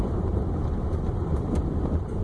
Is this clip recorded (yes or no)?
no